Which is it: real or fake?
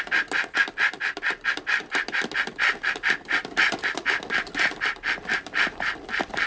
real